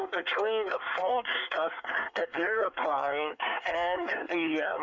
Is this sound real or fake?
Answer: fake